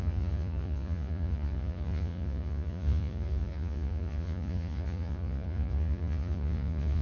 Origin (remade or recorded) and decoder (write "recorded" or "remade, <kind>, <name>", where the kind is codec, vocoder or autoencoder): remade, vocoder, Vocos